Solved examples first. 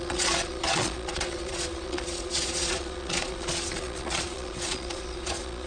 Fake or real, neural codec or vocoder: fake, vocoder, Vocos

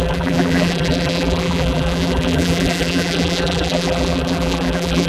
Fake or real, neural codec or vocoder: fake, vocoder, BigVGAN v2